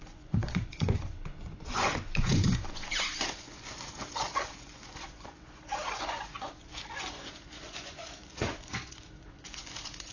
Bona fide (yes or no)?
no